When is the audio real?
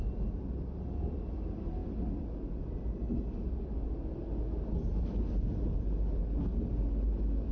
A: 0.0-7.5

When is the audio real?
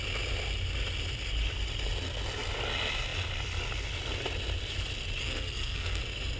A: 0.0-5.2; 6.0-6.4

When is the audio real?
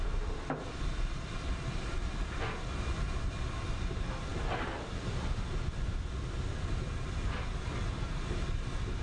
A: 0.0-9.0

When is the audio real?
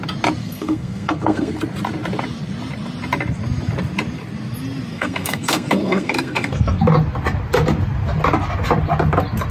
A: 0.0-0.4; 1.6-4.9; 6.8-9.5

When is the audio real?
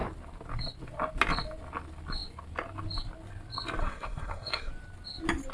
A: 0.0-3.8; 4.7-5.5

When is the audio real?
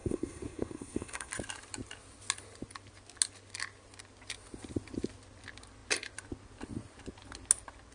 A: 1.3-7.9